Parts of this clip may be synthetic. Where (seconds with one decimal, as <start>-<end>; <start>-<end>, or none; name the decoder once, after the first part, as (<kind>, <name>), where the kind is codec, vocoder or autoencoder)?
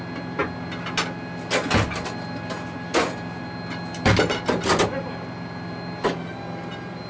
none